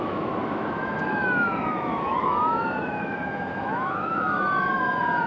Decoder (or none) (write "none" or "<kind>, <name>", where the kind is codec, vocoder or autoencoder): autoencoder, DAC-VAE